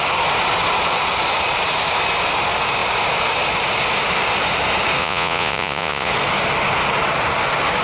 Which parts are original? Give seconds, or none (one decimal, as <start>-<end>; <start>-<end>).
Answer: 0.0-5.0; 6.1-7.8